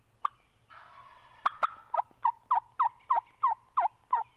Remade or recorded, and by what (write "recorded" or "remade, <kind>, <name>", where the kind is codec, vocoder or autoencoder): recorded